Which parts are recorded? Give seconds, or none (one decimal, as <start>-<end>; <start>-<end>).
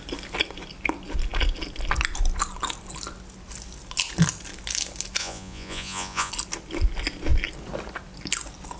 0.0-5.2; 6.3-8.8